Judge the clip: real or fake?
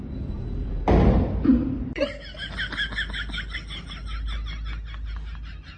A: real